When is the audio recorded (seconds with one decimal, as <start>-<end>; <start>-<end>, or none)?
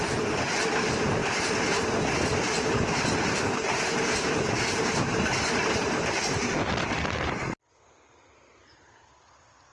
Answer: 0.0-9.7